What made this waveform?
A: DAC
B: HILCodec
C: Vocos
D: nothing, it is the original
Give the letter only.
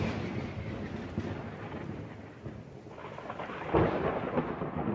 D